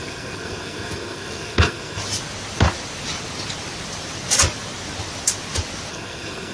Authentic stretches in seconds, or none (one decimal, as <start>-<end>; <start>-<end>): 2.0-5.9